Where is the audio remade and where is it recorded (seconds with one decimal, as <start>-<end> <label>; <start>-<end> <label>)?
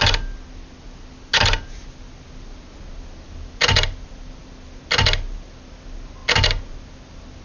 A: 0.0-7.4 recorded